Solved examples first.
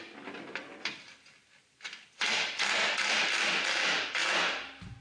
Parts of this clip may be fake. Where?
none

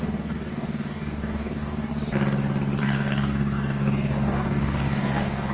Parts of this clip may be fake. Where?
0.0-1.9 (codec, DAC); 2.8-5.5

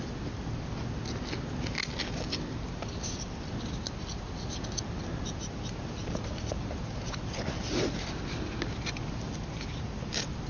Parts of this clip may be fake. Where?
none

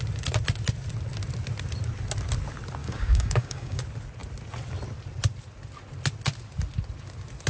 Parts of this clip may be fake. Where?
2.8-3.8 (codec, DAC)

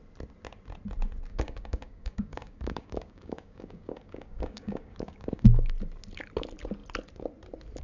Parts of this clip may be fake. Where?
1.3-5.7 (codec, DAC)

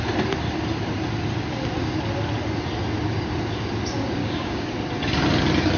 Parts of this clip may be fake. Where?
4.2-4.7 (codec, DAC)

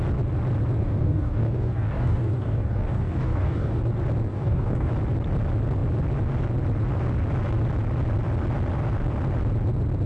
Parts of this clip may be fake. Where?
0.8-3.8 (codec, DAC); 4.3-4.9